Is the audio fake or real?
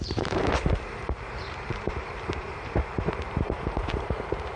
fake